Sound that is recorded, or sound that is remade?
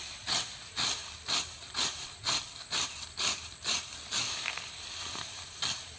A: recorded